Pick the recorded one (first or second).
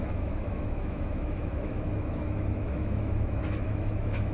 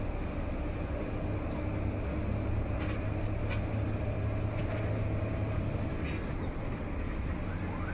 second